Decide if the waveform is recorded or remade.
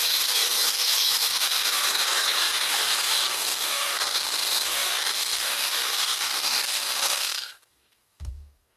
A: remade